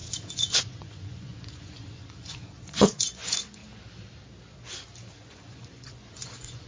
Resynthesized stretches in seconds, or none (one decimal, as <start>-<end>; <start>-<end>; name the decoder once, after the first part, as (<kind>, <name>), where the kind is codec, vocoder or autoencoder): 0.0-3.6 (vocoder, Vocos); 5.1-6.7